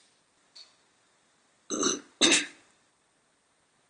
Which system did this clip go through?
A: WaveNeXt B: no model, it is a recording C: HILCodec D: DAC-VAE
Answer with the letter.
B